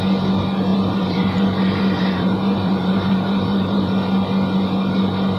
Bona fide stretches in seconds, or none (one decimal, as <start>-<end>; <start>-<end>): 0.0-0.7; 3.9-5.4